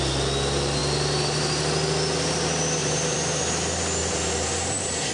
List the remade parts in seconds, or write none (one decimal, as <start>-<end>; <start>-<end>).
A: 2.8-3.4; 4.0-5.1